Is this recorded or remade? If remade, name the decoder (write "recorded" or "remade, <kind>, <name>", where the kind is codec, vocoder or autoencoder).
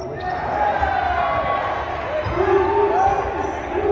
recorded